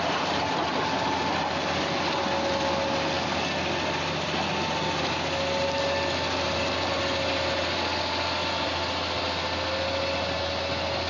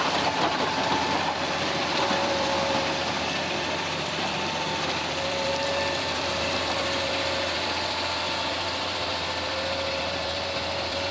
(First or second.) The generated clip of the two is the second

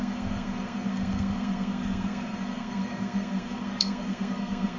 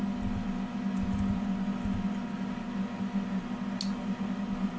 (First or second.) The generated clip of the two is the first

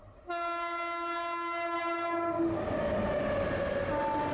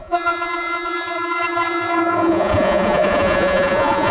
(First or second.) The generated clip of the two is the second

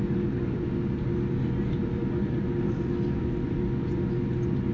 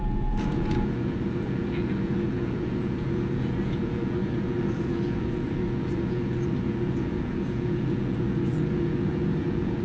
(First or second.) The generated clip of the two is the second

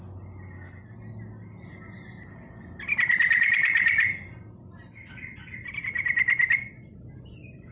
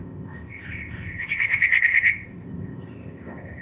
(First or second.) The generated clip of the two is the second